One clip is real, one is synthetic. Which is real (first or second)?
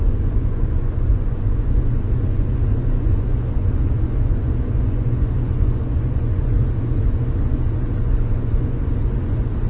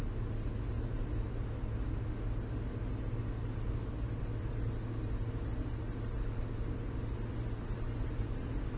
second